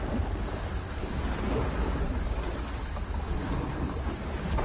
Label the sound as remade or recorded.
recorded